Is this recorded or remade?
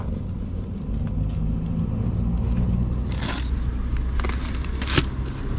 recorded